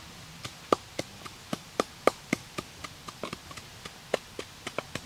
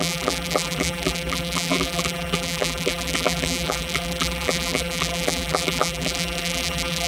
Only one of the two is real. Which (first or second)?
first